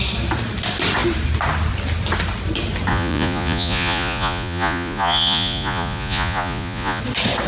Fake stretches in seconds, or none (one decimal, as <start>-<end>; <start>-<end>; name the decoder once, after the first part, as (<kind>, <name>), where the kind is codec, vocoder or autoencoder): 2.9-7.0 (vocoder, Vocos)